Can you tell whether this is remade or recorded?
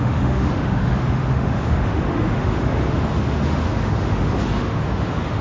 remade